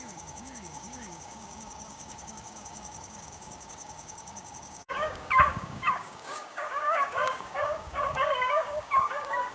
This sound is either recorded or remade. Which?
remade